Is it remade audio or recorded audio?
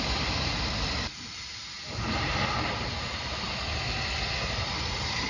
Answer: recorded